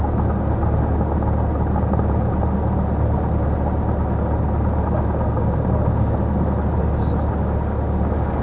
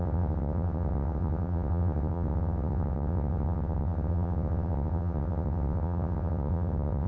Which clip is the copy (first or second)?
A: second